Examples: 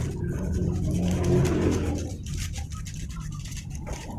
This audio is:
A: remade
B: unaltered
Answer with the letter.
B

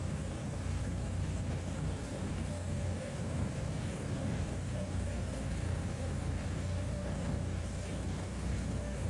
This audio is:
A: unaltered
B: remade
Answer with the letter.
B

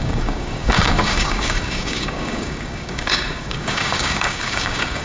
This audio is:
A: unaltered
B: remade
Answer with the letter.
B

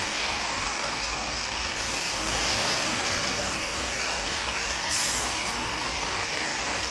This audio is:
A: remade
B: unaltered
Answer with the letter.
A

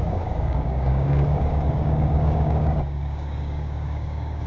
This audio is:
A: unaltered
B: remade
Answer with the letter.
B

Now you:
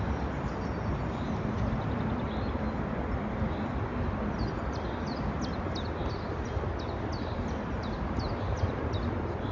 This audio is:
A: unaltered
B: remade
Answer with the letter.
A